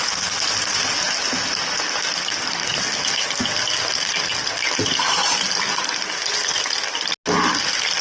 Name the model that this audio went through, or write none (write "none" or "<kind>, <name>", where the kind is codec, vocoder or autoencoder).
none